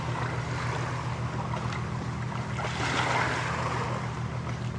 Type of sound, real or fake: real